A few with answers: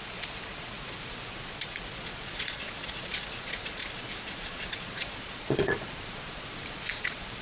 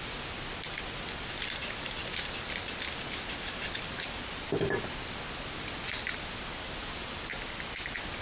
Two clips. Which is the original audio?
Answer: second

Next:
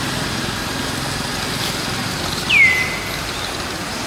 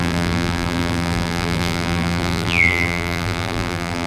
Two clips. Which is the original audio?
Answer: first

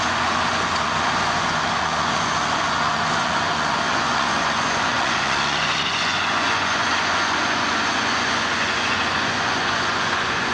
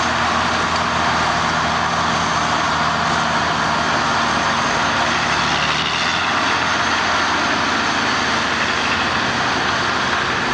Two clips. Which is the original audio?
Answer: second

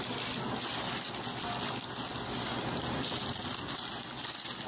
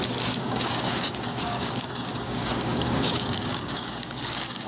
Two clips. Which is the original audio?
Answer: first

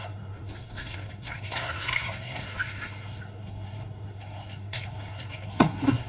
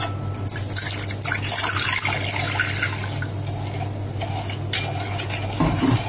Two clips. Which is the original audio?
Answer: second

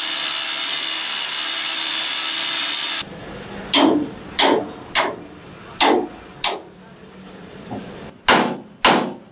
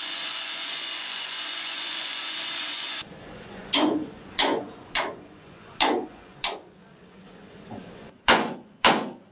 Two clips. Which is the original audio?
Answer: first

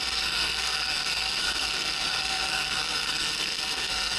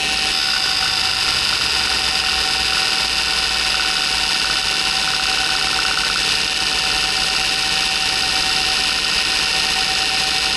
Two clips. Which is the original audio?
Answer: second